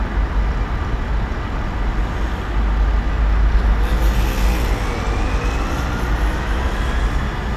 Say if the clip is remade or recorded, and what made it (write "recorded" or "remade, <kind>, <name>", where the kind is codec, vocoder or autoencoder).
recorded